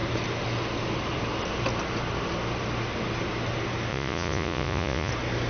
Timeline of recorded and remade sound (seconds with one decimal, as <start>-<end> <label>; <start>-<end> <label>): 0.0-3.9 recorded; 3.9-5.1 remade; 5.1-5.5 recorded